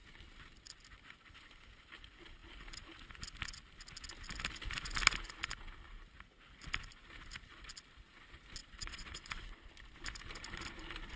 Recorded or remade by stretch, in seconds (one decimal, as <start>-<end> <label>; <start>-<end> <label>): 0.0-8.6 recorded; 8.6-9.7 remade; 9.7-11.2 recorded